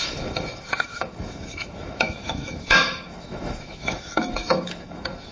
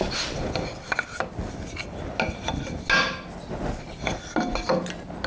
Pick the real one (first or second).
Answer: second